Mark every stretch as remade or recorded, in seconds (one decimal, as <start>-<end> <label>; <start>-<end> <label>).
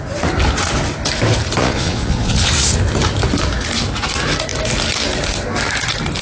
0.0-1.6 recorded; 1.6-2.5 remade; 2.5-6.2 recorded